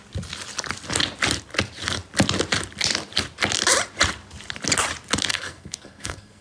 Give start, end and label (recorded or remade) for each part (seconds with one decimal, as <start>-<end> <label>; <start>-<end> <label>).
0.0-5.3 recorded; 5.3-6.4 remade